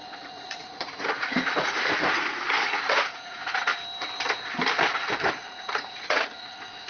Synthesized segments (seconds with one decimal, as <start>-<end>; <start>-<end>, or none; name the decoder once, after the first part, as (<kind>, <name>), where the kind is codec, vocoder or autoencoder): 0.0-3.7 (vocoder, Vocos); 4.9-6.9